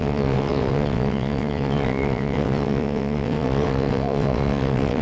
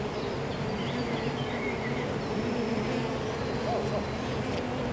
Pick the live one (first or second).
second